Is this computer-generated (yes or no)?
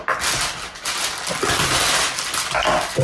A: no